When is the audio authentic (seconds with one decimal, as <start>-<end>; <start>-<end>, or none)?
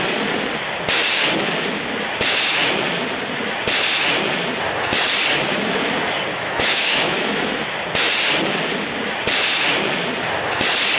0.0-6.3; 7.6-11.0